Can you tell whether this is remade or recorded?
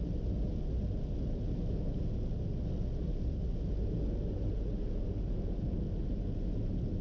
recorded